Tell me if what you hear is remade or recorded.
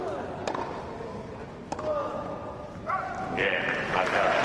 recorded